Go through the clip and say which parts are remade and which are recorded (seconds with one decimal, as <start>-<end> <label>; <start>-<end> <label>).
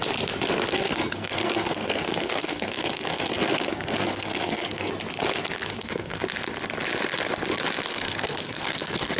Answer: 0.0-0.7 recorded; 0.7-4.9 remade; 4.9-5.7 recorded; 5.7-6.2 remade; 6.2-7.9 recorded; 7.9-9.2 remade